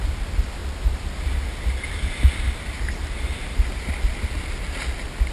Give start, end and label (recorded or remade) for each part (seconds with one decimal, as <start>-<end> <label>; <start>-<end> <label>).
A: 0.0-5.3 recorded